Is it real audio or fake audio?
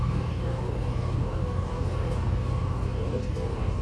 fake